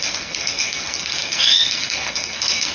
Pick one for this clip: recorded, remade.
remade